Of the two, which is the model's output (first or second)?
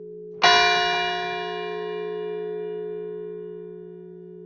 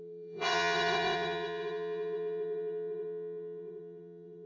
second